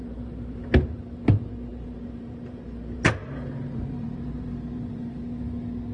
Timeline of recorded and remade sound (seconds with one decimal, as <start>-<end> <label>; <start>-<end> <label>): 0.0-0.6 remade; 0.6-1.7 recorded; 1.7-5.2 remade; 5.2-5.9 recorded